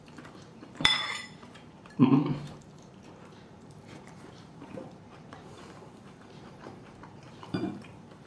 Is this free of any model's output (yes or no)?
no